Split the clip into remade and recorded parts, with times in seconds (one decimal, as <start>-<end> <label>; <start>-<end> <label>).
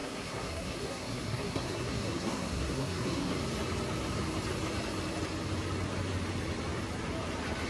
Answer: 0.0-3.4 remade; 3.4-7.7 recorded